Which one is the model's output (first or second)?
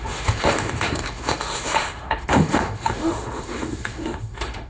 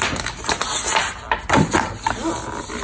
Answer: first